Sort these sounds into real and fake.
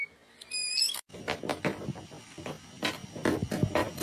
real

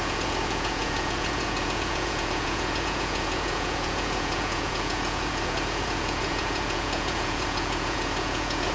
fake